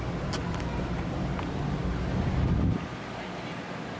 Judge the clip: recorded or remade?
recorded